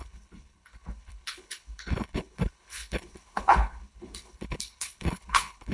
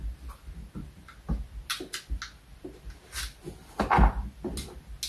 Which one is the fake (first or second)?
first